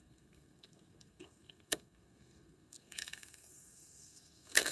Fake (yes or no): yes